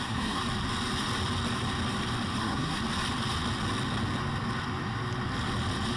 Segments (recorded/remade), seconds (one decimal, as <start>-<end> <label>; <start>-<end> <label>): 0.0-0.4 remade; 0.4-2.4 recorded; 2.4-2.8 remade; 2.8-6.0 recorded